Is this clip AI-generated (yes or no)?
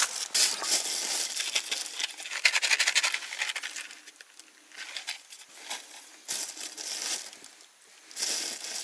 no